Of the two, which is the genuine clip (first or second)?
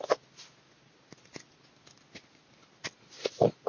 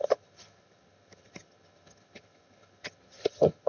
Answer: first